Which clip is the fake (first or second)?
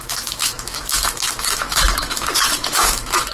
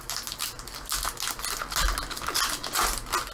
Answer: first